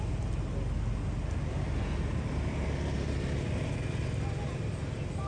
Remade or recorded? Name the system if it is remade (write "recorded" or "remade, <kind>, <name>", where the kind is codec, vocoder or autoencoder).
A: recorded